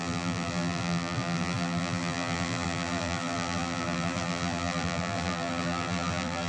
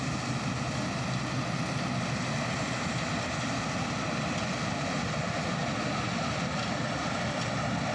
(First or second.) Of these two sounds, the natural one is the second